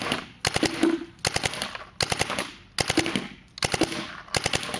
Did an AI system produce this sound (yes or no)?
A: no